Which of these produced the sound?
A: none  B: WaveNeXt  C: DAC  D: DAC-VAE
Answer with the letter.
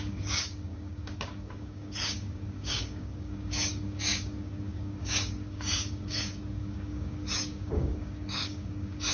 C